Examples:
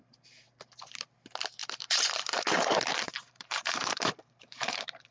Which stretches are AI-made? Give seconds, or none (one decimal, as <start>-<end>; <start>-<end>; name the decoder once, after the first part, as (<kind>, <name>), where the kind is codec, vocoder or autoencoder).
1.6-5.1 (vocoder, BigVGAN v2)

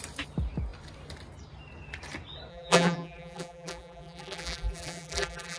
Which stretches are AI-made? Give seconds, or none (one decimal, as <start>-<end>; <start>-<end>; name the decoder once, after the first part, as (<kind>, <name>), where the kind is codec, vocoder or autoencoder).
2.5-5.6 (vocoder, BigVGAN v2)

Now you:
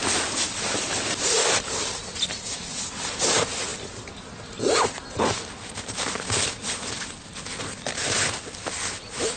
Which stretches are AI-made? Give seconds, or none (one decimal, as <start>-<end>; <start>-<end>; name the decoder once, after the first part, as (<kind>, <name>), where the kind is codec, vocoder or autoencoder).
none

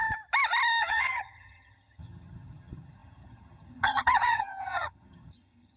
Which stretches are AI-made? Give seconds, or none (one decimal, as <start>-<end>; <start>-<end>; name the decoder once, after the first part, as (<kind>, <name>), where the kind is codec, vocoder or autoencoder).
0.8-5.8 (vocoder, HiFi-GAN)